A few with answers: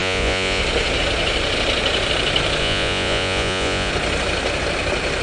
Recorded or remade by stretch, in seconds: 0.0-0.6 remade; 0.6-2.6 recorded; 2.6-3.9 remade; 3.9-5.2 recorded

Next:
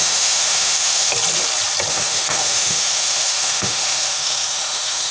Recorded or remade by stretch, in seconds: 0.0-1.1 remade; 1.1-1.9 recorded; 1.9-5.1 remade

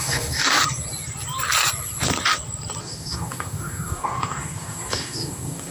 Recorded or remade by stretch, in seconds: 0.0-0.6 remade; 0.6-2.8 recorded; 2.8-5.7 remade

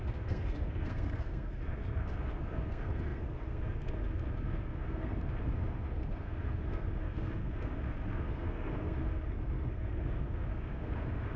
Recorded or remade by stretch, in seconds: 0.0-11.4 remade

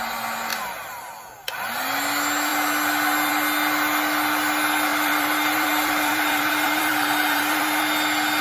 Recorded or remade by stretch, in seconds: 0.0-4.9 recorded; 4.9-7.8 remade; 7.8-8.4 recorded

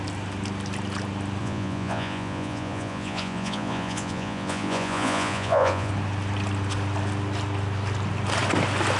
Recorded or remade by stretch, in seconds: 0.0-1.4 recorded; 1.4-5.9 remade; 5.9-9.0 recorded

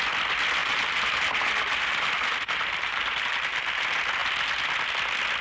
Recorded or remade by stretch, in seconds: 0.0-0.6 recorded; 0.6-3.8 remade; 3.8-5.4 recorded